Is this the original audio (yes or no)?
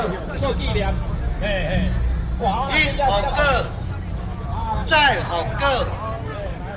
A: yes